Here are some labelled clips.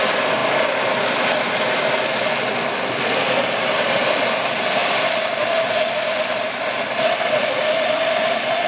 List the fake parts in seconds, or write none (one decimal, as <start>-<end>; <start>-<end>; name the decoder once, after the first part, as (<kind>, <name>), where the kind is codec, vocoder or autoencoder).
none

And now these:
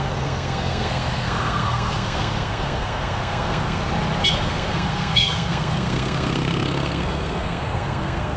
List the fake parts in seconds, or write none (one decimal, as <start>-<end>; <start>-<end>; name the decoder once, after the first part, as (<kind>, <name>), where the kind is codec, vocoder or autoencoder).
0.0-3.8 (codec, SNAC); 4.3-8.4

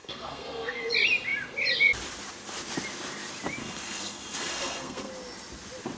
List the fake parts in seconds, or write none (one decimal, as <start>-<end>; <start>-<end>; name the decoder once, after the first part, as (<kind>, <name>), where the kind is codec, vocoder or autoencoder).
0.0-0.9 (codec, SNAC); 3.6-5.1